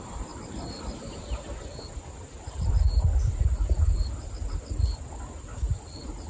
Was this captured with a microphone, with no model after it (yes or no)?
yes